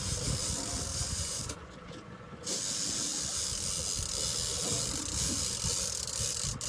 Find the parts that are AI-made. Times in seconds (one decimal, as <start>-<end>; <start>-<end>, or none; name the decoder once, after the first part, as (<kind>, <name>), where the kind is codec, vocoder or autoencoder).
0.9-2.6 (vocoder, Vocos)